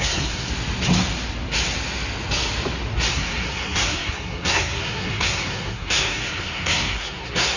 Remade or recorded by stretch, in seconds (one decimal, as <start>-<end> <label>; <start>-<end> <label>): 0.0-0.5 remade; 0.5-3.1 recorded; 3.1-7.6 remade